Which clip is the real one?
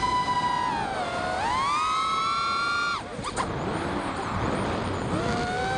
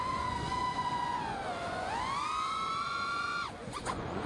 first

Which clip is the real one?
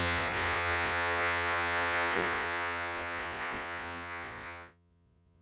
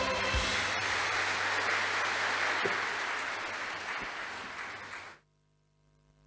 second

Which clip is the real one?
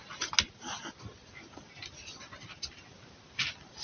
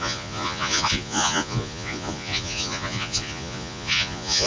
first